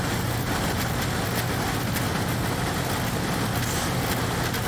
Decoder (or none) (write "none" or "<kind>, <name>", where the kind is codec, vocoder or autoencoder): none